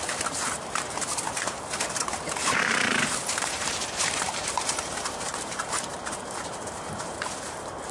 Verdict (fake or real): fake